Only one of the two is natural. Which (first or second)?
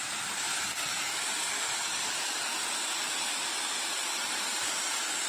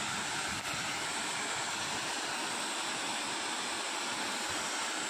second